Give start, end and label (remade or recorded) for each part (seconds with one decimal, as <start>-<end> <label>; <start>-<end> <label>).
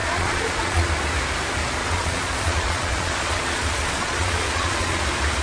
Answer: 0.0-0.9 remade; 0.9-1.8 recorded; 1.8-5.0 remade; 5.0-5.4 recorded